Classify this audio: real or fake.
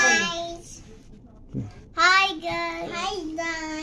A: real